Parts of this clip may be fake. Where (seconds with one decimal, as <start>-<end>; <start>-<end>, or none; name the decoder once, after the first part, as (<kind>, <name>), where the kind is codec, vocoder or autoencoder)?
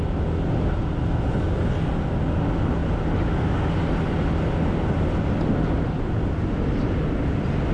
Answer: none